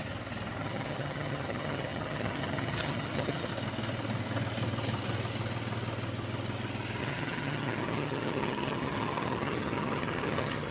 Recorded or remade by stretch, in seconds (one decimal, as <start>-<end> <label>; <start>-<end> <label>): 0.0-0.6 recorded; 0.6-3.5 remade; 3.5-7.0 recorded; 7.0-10.7 remade